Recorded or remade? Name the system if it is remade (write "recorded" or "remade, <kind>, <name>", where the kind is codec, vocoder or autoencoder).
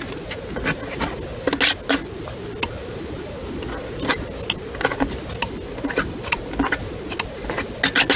recorded